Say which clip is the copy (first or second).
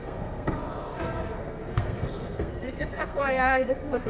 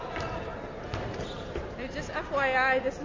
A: first